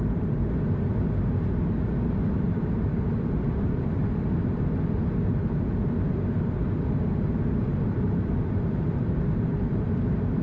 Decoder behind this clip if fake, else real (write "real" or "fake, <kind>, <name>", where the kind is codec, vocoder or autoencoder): fake, vocoder, BigVGAN v2